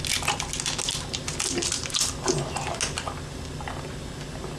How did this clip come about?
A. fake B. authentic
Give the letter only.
B